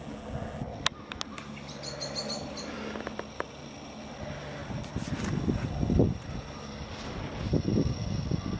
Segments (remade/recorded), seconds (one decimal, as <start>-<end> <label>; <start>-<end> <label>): 0.0-8.6 recorded